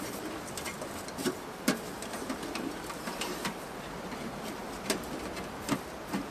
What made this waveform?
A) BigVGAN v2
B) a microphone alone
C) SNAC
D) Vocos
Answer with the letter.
B